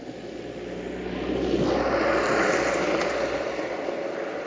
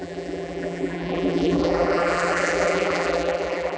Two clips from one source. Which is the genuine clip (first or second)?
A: first